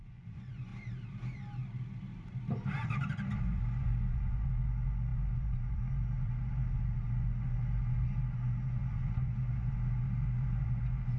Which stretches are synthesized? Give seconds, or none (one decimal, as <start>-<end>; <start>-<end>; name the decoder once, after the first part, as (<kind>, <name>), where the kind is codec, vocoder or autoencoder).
0.0-0.7 (vocoder, Vocos); 3.4-11.2